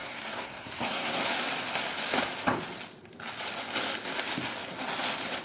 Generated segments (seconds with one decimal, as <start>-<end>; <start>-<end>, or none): 0.0-1.2